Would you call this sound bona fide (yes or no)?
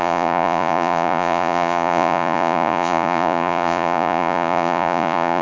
no